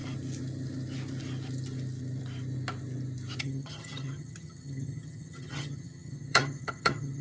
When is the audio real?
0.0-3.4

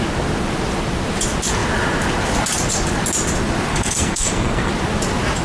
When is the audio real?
0.0-3.7; 4.7-5.4